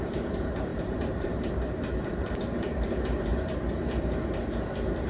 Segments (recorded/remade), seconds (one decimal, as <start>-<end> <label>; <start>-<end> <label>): 0.0-3.3 remade; 3.3-4.4 recorded; 4.4-5.1 remade